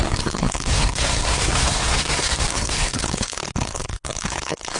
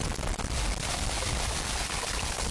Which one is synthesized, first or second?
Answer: first